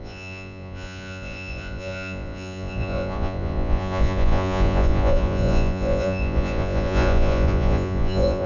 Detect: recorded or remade remade